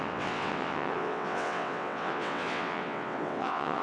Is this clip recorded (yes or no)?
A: no